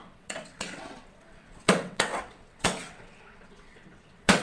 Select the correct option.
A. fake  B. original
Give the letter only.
A